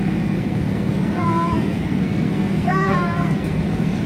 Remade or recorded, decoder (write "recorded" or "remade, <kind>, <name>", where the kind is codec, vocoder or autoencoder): remade, codec, SNAC